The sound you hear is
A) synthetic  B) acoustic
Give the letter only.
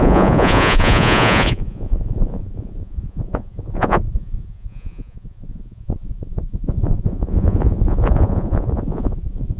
A